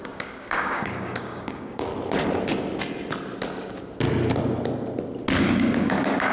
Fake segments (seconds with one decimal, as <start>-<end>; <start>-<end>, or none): 0.0-1.9; 5.4-6.3